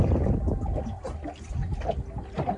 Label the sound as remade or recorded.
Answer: recorded